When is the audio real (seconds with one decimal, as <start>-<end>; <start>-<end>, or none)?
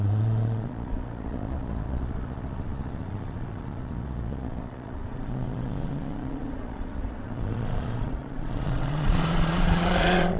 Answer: none